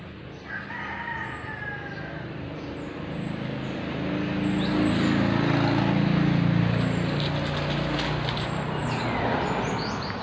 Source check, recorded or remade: recorded